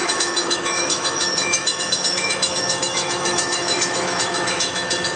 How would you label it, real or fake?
fake